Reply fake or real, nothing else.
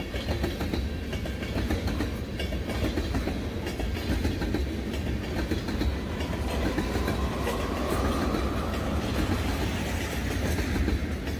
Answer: real